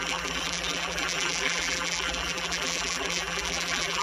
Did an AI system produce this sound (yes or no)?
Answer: yes